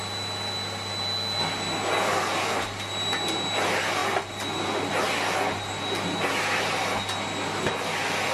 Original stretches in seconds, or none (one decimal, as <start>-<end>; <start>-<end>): 0.0-8.3